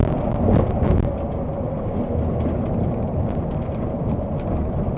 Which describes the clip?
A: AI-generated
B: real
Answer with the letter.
B